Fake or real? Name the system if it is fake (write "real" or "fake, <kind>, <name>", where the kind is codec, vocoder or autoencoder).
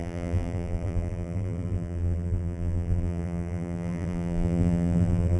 fake, vocoder, BigVGAN v2